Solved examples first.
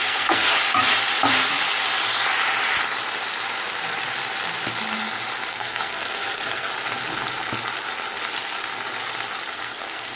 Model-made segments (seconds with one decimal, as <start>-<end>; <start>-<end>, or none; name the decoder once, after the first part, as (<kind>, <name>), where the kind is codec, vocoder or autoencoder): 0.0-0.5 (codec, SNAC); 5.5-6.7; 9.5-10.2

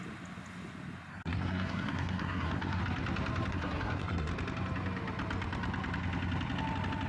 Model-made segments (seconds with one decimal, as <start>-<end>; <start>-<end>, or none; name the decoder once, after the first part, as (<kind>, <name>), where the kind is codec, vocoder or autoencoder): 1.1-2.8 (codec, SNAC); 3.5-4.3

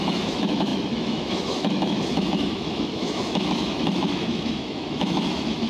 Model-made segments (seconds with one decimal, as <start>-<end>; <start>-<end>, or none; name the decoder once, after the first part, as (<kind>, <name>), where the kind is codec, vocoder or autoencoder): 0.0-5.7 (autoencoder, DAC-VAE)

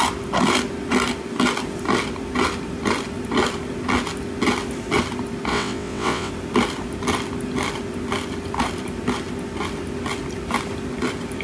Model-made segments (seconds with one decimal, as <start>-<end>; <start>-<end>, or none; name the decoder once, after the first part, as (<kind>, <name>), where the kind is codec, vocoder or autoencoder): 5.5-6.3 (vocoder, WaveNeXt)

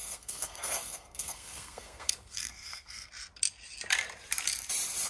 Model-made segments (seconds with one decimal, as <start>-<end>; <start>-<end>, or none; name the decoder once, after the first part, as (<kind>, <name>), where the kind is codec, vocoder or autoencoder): 0.0-3.1 (codec, SNAC)

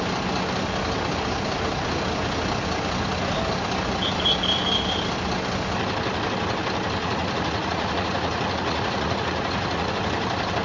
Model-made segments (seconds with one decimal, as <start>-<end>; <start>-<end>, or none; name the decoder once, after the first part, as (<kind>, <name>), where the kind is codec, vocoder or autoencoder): 7.0-9.9 (vocoder, Vocos)